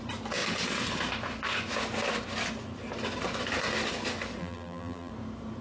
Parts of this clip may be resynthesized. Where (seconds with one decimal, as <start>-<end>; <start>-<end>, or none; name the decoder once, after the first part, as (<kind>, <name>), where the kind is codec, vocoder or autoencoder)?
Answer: 4.4-5.1 (vocoder, BigVGAN v2)

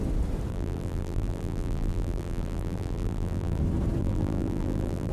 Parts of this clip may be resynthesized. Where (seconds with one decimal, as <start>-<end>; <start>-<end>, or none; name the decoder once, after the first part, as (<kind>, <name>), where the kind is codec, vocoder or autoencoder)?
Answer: 0.5-3.6 (vocoder, BigVGAN v2); 4.0-5.1

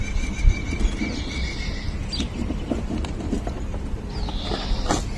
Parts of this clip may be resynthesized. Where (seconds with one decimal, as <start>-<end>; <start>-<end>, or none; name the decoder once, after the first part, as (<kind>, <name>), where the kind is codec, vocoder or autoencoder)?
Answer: 0.0-5.2 (vocoder, BigVGAN v2)

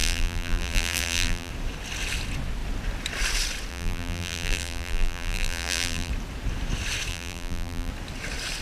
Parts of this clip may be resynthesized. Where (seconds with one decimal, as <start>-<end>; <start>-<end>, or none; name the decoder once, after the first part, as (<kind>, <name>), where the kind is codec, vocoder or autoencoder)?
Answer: 0.0-1.5 (vocoder, BigVGAN v2); 3.7-6.1; 7.1-7.9

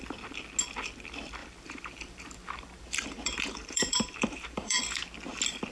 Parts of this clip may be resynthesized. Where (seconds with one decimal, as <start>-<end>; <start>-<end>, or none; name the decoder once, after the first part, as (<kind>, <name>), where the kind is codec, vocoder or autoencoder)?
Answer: 1.4-4.8 (vocoder, BigVGAN v2)

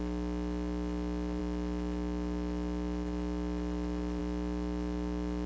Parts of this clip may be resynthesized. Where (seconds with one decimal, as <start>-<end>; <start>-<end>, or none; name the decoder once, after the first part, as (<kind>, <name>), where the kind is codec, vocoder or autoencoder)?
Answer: none

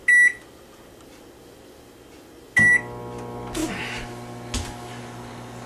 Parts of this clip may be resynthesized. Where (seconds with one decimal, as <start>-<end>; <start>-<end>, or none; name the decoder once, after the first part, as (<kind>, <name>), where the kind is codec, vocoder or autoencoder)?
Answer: none